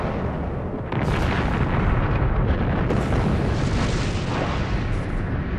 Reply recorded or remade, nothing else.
recorded